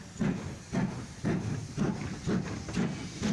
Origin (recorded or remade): recorded